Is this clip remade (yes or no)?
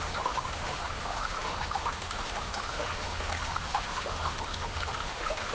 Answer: yes